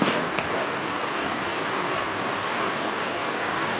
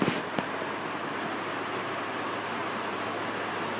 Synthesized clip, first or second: first